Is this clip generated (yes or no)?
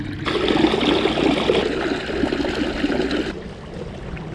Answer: no